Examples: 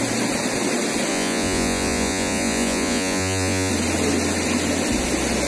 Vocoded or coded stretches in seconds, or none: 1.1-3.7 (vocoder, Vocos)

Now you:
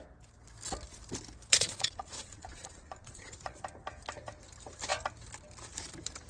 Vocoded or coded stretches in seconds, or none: 1.5-3.6 (vocoder, Vocos)

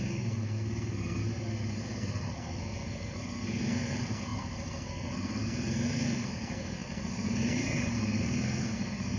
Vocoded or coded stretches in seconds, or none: 0.0-1.2 (codec, SNAC); 1.7-9.2

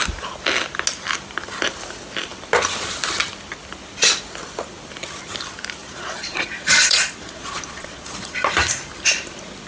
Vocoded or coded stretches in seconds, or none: 5.8-8.5 (vocoder, Vocos)

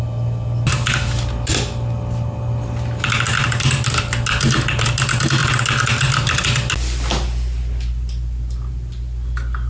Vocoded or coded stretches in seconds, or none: none